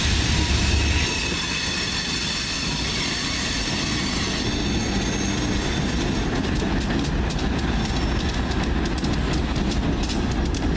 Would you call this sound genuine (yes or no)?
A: yes